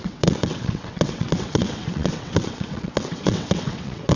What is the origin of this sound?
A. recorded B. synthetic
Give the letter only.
B